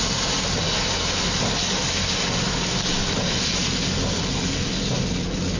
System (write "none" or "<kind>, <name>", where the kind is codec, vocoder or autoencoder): none